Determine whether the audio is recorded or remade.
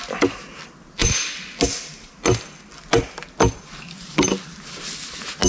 recorded